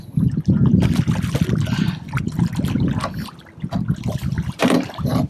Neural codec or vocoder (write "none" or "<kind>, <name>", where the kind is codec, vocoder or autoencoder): none